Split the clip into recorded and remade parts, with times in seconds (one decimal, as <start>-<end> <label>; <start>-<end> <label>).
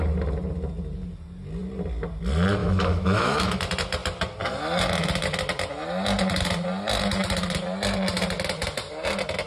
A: 0.0-2.6 recorded; 2.6-3.6 remade; 3.6-9.5 recorded